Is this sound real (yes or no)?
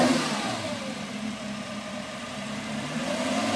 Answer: no